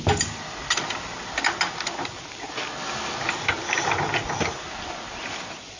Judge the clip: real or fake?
real